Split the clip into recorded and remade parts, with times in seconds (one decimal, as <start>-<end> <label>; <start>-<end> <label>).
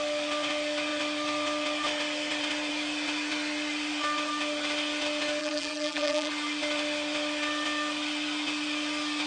0.0-5.4 recorded; 5.4-6.3 remade; 6.3-9.3 recorded